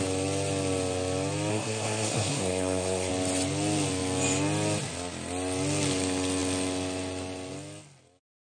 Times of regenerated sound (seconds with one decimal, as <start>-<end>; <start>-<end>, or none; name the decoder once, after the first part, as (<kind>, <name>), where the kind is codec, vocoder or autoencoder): 1.5-3.1 (codec, SNAC)